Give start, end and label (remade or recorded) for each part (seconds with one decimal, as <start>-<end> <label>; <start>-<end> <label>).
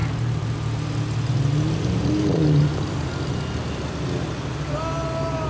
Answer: 0.0-0.5 remade; 0.5-1.7 recorded; 1.7-3.1 remade; 3.1-5.5 recorded